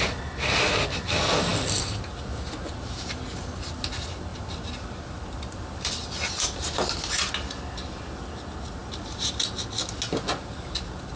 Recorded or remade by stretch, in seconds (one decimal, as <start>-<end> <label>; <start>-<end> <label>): 0.0-4.3 recorded; 4.3-7.3 remade; 7.3-8.8 recorded; 8.8-9.4 remade; 9.4-11.2 recorded